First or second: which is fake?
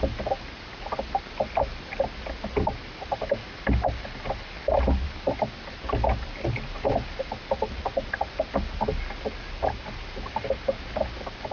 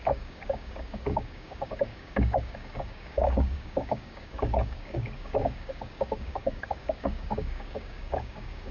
second